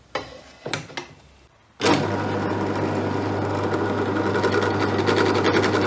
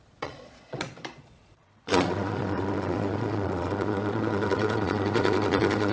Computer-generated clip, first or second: second